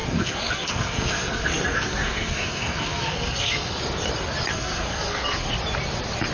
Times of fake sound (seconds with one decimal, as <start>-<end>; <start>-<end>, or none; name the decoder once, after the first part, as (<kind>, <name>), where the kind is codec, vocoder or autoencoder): 0.0-3.8 (codec, SNAC); 4.5-5.5